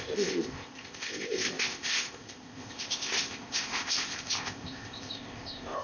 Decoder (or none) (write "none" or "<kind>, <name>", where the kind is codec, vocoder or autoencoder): codec, ZipCodec